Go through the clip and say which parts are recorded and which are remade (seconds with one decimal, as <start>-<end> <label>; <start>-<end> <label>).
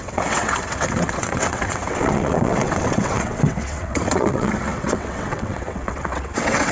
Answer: 0.0-6.7 remade